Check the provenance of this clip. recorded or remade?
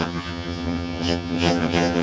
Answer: remade